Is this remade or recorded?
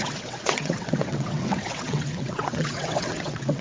remade